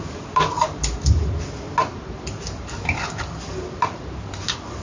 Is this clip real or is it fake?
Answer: real